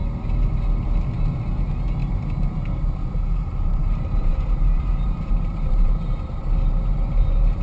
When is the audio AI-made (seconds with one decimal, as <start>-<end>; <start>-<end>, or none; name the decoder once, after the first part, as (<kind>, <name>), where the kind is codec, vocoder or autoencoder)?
2.0-6.4 (vocoder, BigVGAN v2)